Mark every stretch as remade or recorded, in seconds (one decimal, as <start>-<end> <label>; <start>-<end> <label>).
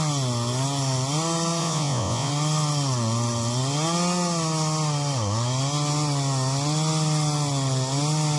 0.0-1.6 recorded; 1.6-2.3 remade; 2.3-8.4 recorded